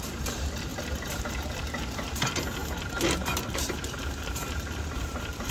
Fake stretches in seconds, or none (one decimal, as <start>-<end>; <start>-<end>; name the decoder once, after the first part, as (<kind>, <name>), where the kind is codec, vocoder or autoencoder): 0.0-0.7 (vocoder, BigVGAN v2); 1.2-2.6; 3.3-5.5